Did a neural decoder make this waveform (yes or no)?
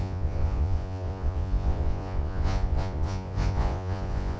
yes